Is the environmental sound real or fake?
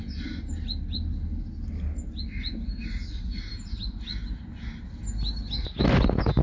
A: real